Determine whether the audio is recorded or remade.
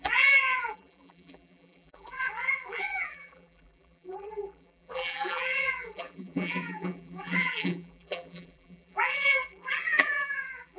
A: remade